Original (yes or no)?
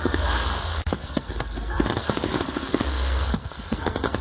no